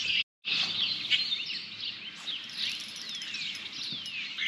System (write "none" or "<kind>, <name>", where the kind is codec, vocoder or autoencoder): none